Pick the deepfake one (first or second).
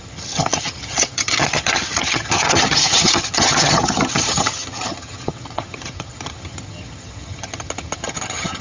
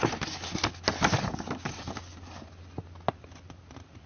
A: first